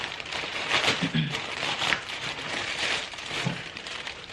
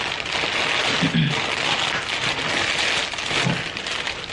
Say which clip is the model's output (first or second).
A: first